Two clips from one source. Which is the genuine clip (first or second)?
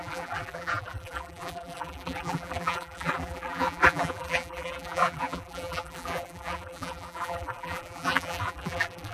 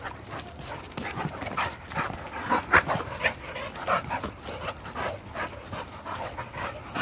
second